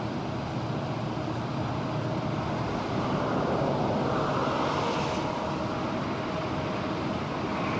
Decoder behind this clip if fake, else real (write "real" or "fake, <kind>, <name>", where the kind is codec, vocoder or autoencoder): real